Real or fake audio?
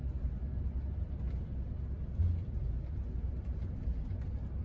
real